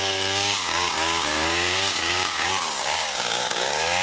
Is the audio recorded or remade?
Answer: remade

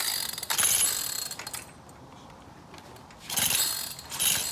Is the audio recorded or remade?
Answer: recorded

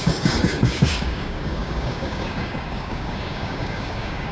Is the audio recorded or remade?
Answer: remade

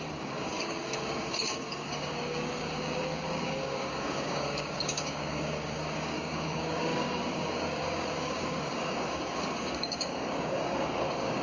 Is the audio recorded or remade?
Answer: remade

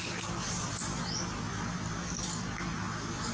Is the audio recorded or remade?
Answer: recorded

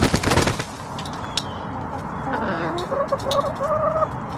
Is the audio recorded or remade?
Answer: recorded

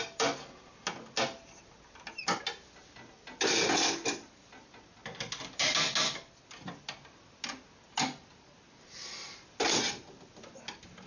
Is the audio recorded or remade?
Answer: recorded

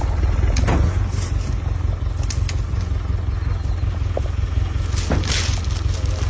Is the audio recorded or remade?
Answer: recorded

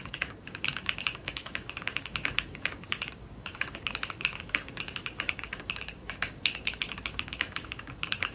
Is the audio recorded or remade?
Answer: remade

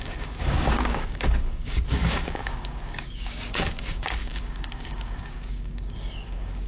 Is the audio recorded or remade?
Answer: remade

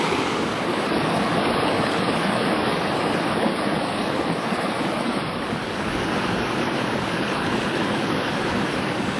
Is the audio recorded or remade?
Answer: remade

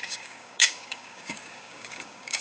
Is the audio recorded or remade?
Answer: remade